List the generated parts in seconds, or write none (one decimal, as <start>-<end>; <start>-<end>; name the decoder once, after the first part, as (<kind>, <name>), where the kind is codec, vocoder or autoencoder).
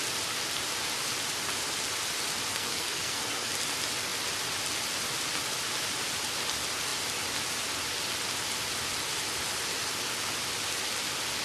2.5-3.5 (codec, SNAC)